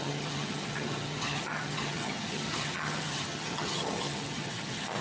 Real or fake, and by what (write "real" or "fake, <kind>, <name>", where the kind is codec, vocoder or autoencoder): fake, vocoder, HiFi-GAN